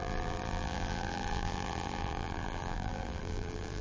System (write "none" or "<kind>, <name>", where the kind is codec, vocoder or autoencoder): vocoder, BigVGAN v2